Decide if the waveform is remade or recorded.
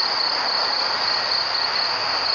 recorded